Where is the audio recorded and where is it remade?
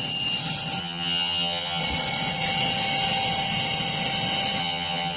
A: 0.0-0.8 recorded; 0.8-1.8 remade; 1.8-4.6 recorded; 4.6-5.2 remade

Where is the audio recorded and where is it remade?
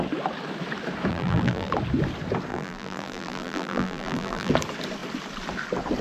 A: 0.0-1.1 recorded; 1.1-1.7 remade; 1.7-2.5 recorded; 2.5-4.5 remade; 4.5-6.0 recorded